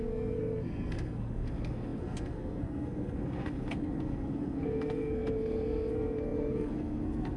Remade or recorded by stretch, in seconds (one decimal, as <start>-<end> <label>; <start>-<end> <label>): 0.0-7.4 remade